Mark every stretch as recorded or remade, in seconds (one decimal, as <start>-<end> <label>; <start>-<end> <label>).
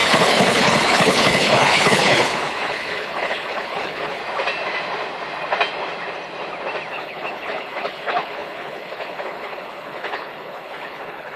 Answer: 0.0-4.2 remade; 4.2-6.9 recorded; 6.9-11.4 remade